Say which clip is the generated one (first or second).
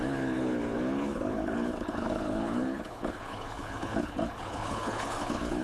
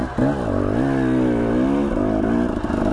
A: first